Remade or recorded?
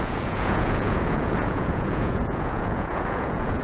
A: remade